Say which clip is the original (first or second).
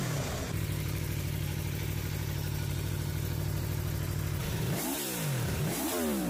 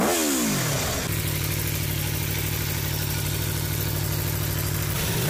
second